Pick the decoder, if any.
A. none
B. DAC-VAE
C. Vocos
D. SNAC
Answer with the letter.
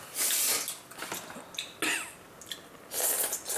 A